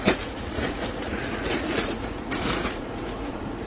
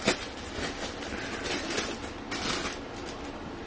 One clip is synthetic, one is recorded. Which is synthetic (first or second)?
first